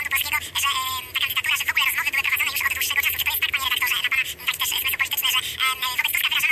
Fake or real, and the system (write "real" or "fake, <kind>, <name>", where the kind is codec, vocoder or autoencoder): real